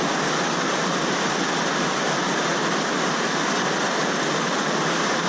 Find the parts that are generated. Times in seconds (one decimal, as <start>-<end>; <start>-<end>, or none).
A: none